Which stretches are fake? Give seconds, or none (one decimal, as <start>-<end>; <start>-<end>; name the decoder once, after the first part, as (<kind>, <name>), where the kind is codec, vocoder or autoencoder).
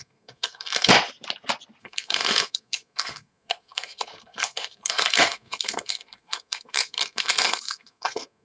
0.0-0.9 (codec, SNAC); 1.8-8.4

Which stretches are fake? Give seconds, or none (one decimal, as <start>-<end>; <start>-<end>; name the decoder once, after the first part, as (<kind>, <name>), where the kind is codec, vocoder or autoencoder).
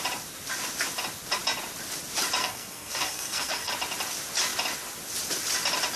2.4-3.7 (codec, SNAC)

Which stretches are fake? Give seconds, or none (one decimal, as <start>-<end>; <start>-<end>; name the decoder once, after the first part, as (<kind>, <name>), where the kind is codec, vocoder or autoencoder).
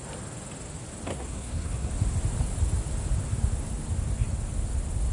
1.1-1.9 (codec, SNAC)